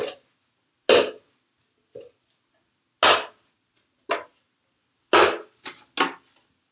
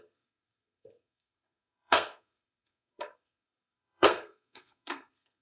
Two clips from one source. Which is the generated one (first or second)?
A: second